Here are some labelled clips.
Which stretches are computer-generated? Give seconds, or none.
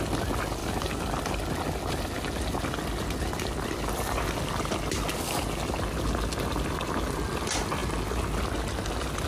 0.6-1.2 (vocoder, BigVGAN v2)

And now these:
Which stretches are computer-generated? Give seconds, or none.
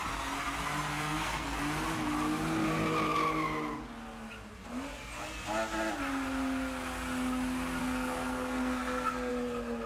0.9-1.6 (codec, SNAC); 7.8-9.3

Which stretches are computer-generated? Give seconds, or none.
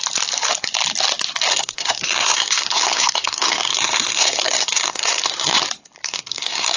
1.5-5.6 (codec, SNAC); 6.0-6.8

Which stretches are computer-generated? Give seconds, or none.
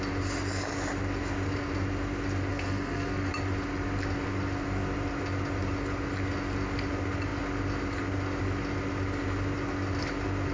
2.5-3.3 (codec, SNAC)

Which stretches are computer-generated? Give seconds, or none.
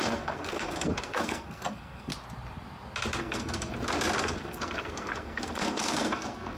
0.0-2.1 (codec, SNAC); 3.2-3.7; 4.2-6.6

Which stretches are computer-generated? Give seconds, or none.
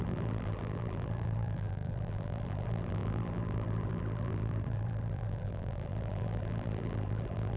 0.0-7.6 (vocoder, BigVGAN v2)